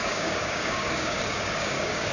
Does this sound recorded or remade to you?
remade